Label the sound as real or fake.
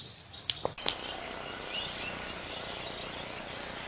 real